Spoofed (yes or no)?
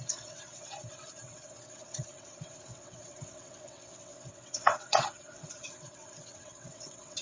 yes